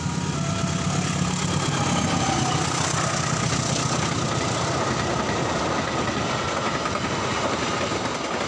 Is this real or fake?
real